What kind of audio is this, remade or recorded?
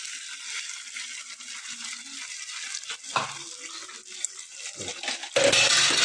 recorded